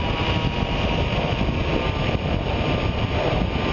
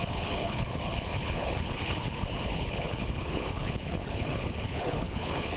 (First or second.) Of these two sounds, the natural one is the first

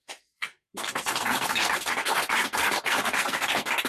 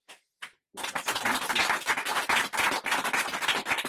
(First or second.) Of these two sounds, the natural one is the second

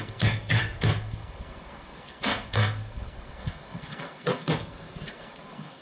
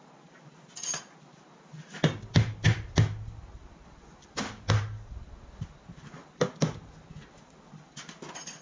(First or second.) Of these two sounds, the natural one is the second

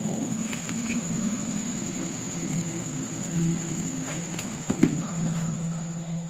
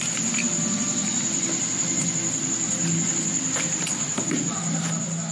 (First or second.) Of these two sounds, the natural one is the second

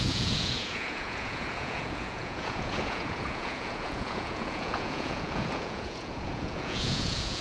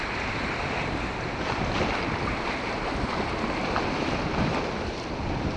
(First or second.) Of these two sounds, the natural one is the second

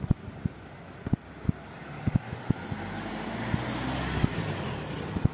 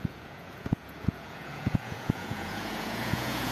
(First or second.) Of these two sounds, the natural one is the first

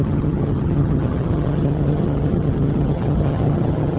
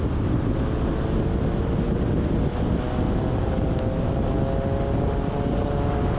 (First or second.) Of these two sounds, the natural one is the second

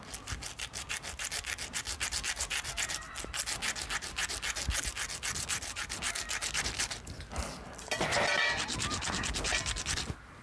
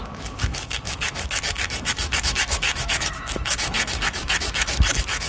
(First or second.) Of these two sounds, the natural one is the first